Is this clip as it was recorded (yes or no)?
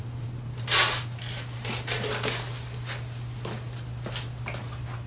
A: yes